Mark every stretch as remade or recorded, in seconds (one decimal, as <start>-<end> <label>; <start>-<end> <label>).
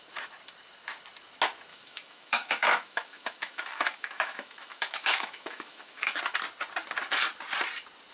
0.0-1.7 recorded; 1.7-6.2 remade; 6.2-8.1 recorded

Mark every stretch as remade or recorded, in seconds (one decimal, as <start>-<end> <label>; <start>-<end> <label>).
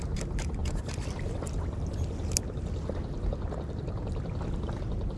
0.0-5.2 recorded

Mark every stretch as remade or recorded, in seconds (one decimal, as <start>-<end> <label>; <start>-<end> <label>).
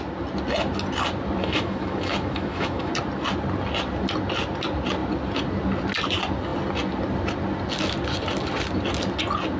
0.0-1.4 recorded; 1.4-2.9 remade; 2.9-9.6 recorded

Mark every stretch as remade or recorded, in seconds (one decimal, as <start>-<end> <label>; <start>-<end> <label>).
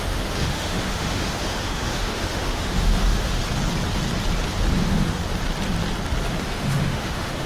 0.0-3.4 remade; 3.4-4.8 recorded; 4.8-5.2 remade; 5.2-6.3 recorded; 6.3-7.5 remade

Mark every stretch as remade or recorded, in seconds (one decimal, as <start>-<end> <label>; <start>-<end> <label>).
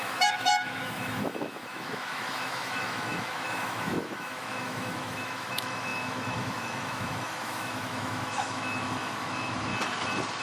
0.0-9.7 remade; 9.7-10.4 recorded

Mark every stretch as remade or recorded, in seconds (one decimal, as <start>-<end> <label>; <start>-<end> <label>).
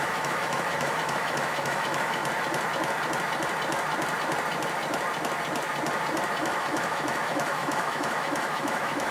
0.0-2.2 remade; 2.2-6.4 recorded; 6.4-9.1 remade